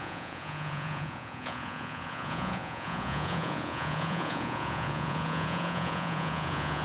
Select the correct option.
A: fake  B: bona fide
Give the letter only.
A